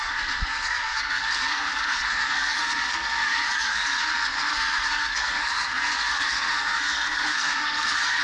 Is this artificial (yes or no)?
yes